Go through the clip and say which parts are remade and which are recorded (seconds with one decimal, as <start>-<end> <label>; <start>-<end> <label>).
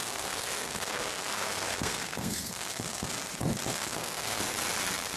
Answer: 0.0-3.1 remade; 3.1-3.7 recorded; 3.7-4.4 remade; 4.4-5.2 recorded